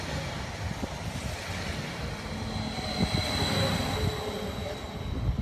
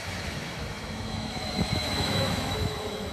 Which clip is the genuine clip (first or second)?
first